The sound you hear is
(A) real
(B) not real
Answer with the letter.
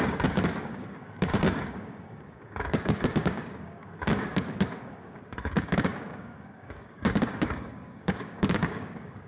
B